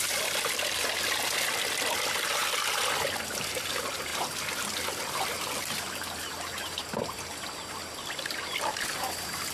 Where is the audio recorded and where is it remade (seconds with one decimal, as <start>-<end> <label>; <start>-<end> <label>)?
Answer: 0.0-2.4 remade; 2.4-3.1 recorded; 3.1-9.5 remade